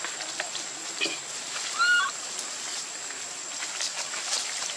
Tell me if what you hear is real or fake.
real